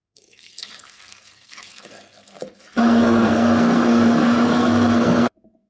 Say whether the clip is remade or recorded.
remade